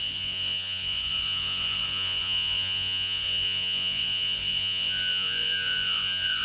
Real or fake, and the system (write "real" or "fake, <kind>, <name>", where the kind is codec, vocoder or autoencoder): fake, vocoder, Vocos